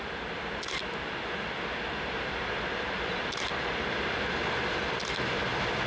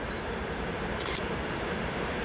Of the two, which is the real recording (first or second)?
first